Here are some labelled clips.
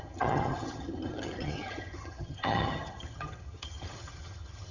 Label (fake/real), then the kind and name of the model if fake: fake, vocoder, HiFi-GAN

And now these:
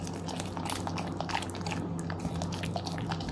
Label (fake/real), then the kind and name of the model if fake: real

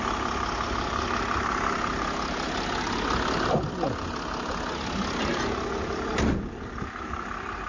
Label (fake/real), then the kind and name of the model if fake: real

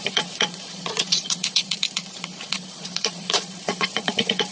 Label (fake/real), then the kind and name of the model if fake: fake, vocoder, Vocos